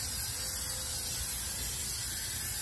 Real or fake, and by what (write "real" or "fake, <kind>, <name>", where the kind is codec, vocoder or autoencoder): real